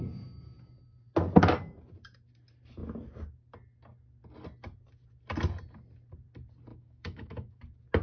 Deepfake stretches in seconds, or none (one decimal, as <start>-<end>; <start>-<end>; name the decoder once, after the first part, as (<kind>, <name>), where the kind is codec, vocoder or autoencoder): 6.7-7.6 (autoencoder, DAC-VAE)